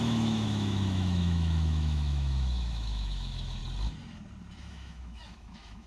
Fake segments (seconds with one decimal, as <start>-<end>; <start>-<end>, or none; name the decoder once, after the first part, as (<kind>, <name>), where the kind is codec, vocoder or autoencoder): 0.0-3.6 (autoencoder, DAC-VAE); 4.6-5.9